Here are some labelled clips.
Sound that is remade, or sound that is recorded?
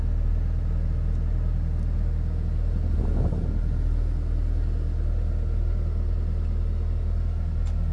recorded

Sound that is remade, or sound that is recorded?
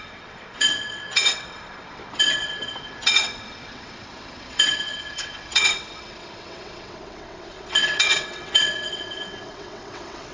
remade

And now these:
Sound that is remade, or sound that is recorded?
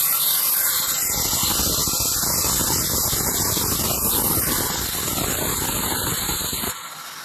recorded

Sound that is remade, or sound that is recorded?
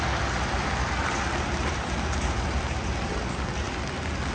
recorded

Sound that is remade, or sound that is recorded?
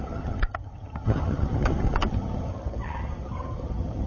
remade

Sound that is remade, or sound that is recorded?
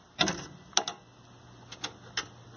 recorded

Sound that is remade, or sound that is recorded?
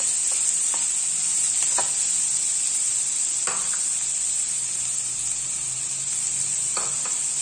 recorded